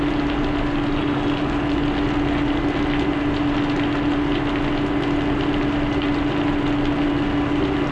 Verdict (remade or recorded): recorded